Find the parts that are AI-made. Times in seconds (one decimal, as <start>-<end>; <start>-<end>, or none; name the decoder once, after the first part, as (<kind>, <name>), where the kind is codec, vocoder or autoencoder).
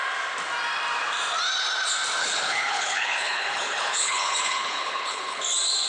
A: 2.2-5.4 (codec, HILCodec)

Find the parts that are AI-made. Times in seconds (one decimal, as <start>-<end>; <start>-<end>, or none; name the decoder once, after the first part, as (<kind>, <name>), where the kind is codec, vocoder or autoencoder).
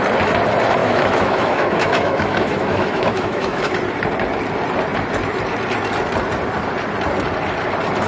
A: 0.8-3.7 (autoencoder, DAC-VAE)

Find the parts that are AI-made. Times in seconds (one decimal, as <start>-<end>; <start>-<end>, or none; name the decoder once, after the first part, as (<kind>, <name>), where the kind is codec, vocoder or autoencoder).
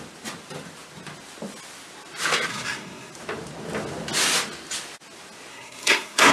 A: 2.5-3.1 (codec, SNAC); 5.5-6.3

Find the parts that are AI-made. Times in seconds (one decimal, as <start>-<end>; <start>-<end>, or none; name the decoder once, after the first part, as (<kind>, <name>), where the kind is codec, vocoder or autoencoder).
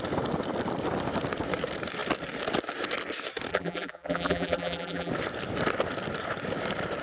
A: 3.5-5.1 (vocoder, BigVGAN v2)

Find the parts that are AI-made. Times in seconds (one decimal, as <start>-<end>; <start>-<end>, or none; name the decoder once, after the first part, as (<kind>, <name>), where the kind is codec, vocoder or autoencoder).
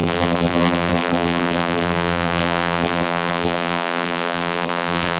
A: 0.0-5.2 (vocoder, BigVGAN v2)